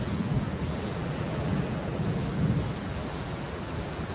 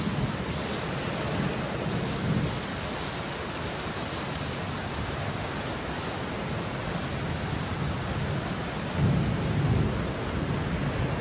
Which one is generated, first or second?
first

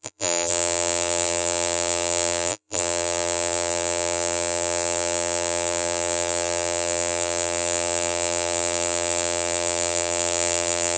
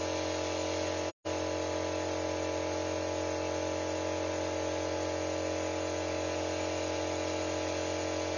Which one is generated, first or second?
first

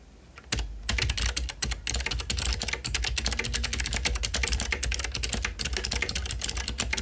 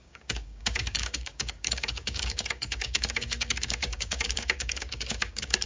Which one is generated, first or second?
second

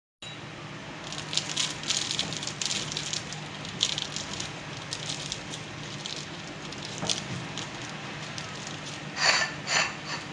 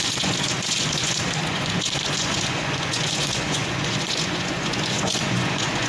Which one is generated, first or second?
second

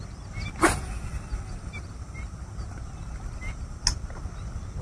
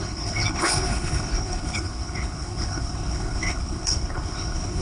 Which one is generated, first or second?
second